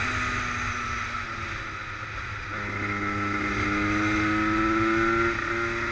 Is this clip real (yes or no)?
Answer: yes